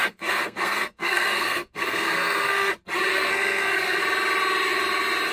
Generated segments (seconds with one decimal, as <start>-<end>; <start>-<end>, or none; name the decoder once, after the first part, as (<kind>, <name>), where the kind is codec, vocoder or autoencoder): 0.0-2.7 (codec, SNAC); 3.1-4.0